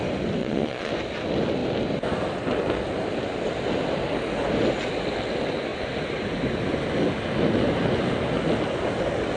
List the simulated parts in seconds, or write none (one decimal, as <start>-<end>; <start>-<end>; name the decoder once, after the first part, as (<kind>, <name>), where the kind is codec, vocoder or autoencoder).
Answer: 0.4-0.9 (vocoder, Vocos)